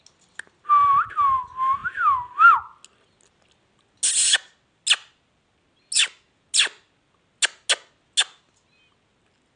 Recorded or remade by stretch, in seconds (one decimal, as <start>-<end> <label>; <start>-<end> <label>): 0.0-9.6 recorded